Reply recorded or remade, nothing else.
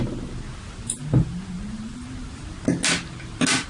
recorded